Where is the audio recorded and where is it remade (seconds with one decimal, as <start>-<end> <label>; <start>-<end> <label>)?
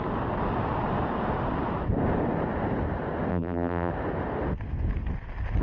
0.0-3.3 recorded; 3.3-3.9 remade; 3.9-5.6 recorded